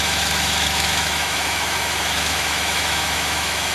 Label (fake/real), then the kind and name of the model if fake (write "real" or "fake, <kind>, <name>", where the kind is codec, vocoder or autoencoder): fake, autoencoder, DAC-VAE